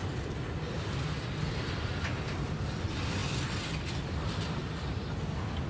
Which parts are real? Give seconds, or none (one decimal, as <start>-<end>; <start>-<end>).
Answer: 1.9-3.2; 4.9-5.7